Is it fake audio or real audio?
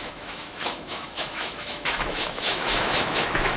fake